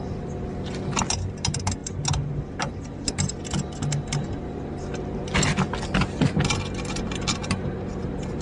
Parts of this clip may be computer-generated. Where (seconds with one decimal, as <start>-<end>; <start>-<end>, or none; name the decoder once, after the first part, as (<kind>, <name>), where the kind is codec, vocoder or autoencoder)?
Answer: none